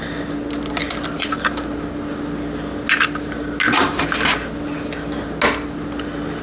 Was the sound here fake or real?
real